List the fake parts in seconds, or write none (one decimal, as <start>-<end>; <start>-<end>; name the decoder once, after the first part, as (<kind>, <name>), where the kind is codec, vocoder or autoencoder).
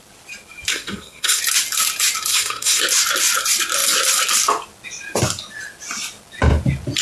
0.7-1.4 (codec, SNAC); 2.3-2.8